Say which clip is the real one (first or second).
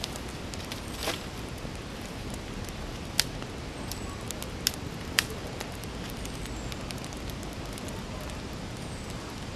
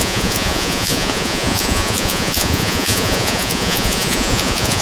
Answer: first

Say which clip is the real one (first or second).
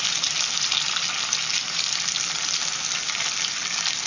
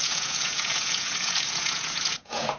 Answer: first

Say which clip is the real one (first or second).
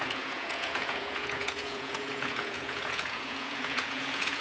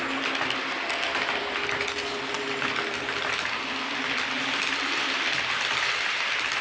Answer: second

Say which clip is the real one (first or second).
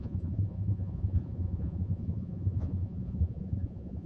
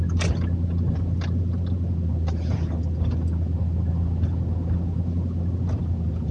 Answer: second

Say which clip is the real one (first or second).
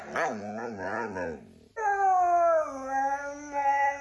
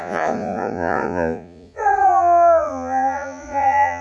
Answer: first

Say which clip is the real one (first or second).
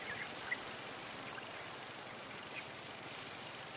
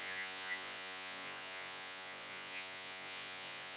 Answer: first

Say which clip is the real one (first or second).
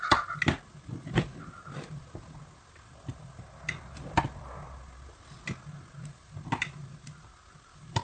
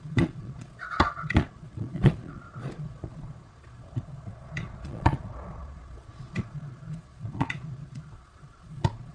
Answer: first